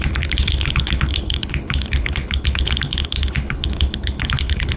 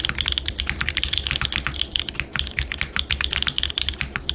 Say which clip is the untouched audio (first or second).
second